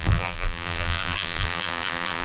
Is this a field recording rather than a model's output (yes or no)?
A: no